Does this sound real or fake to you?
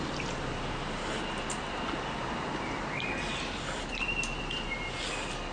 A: real